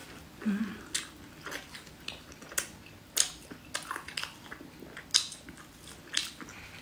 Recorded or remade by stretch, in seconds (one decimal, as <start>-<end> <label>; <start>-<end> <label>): 0.0-6.8 recorded